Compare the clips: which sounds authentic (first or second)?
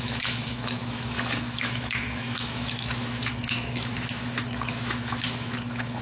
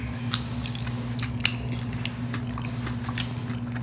second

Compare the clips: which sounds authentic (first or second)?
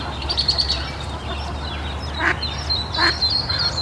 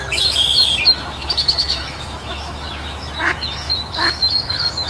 first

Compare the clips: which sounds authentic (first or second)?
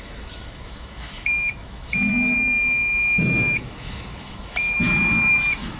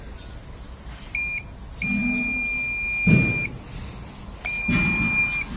second